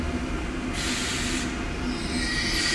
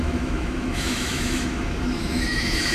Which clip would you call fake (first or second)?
second